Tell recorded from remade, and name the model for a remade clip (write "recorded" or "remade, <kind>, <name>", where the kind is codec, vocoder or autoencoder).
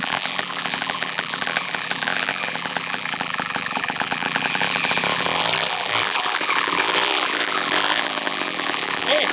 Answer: remade, vocoder, BigVGAN v2